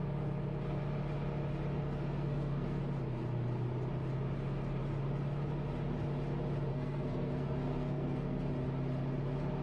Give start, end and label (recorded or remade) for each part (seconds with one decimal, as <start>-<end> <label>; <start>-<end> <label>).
0.0-1.8 recorded; 1.8-2.8 remade; 2.8-6.7 recorded; 6.7-8.5 remade; 8.5-9.6 recorded